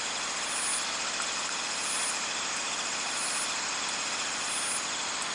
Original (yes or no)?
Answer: yes